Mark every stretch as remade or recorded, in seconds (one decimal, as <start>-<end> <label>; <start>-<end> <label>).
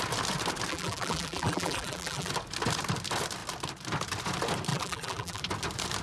0.0-0.7 recorded; 0.7-2.3 remade; 2.3-4.7 recorded; 4.7-5.4 remade; 5.4-6.0 recorded